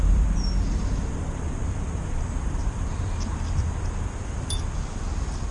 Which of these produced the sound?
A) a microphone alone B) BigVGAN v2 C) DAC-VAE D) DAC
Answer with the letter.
B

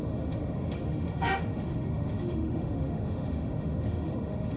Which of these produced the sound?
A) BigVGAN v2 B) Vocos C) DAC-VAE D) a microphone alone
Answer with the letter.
C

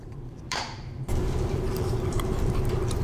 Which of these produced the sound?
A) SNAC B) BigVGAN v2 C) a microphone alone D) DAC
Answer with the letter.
B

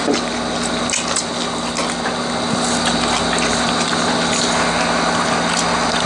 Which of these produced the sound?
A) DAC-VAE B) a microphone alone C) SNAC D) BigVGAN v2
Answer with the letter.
B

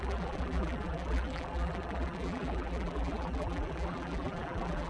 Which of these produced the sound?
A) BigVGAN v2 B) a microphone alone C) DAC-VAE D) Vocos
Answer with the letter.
A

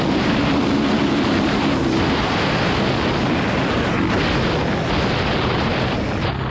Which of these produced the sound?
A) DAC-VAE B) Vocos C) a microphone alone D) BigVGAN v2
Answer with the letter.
C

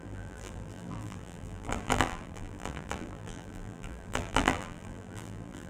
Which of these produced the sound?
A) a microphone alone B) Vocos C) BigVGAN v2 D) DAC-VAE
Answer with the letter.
C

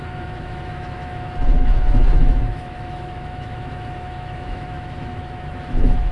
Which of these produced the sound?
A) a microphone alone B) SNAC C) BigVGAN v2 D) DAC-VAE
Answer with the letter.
D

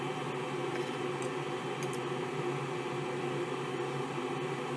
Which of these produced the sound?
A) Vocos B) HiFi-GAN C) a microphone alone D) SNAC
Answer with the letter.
C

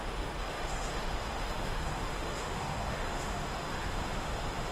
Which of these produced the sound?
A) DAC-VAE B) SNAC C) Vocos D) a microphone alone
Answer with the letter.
A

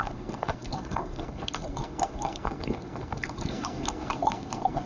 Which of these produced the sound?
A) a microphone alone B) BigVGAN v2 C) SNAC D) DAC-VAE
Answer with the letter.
C